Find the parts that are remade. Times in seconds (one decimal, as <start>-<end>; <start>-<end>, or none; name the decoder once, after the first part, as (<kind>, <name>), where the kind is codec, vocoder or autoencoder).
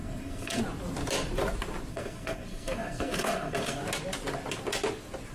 0.0-0.6 (codec, SNAC); 1.9-3.8